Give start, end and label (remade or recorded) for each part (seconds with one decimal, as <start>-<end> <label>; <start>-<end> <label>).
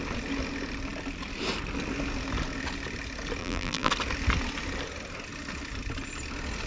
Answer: 0.0-3.4 recorded; 3.4-3.9 remade; 3.9-6.7 recorded